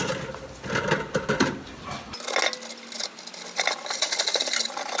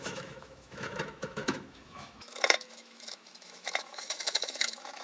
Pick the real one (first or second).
first